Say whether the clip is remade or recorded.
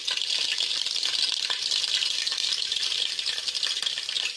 remade